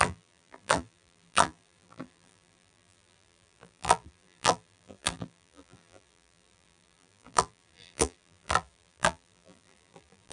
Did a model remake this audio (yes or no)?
yes